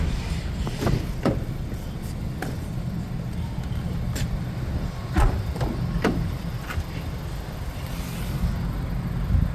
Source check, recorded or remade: recorded